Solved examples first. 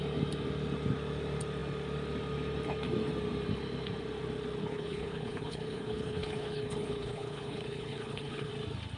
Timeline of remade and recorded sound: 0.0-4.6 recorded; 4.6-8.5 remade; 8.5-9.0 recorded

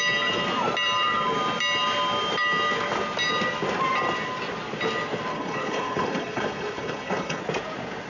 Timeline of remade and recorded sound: 0.0-5.3 recorded; 5.3-7.4 remade; 7.4-8.1 recorded

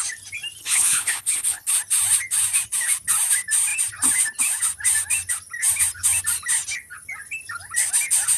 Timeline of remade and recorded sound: 0.0-0.6 recorded; 0.6-1.7 remade; 1.7-8.4 recorded